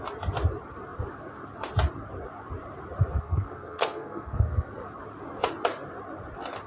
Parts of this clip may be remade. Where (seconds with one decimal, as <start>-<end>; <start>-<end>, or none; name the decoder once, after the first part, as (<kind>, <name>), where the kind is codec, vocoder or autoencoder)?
3.2-4.7 (codec, SNAC)